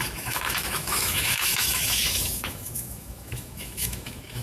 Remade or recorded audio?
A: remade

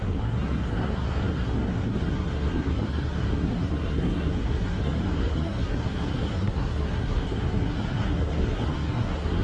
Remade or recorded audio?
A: remade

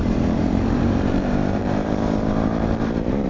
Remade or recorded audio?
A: remade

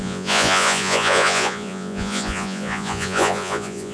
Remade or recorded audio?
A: remade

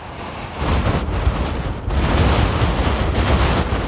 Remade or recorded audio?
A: recorded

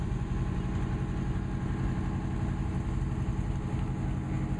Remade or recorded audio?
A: recorded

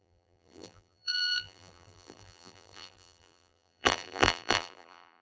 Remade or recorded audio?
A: remade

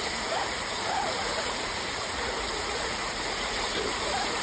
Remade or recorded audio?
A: remade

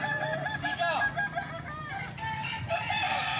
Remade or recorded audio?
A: recorded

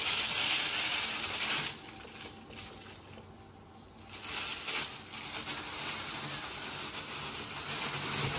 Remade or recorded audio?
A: recorded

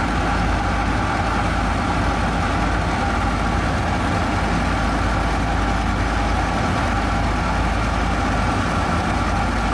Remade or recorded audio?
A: recorded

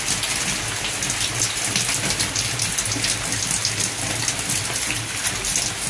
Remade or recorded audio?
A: recorded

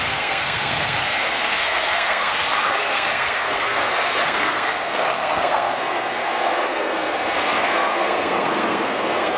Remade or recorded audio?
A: remade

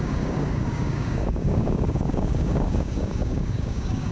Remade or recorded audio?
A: remade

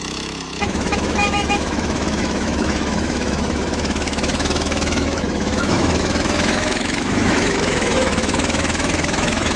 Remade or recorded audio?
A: remade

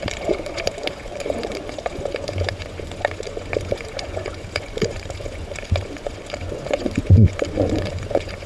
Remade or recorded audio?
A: remade